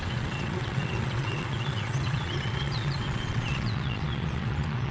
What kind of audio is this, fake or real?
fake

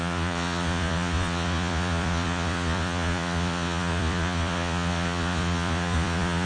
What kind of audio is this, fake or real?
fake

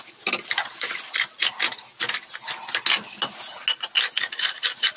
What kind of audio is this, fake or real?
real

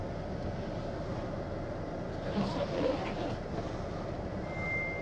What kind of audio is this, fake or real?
real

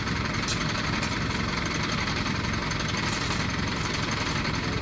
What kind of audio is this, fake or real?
fake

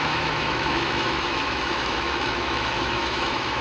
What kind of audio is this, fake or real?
fake